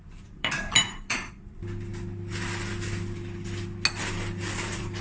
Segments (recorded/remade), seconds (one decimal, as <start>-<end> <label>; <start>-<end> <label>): 0.0-1.9 remade; 1.9-4.1 recorded; 4.1-5.0 remade